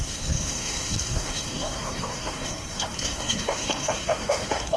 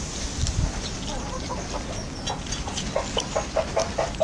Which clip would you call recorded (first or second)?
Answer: second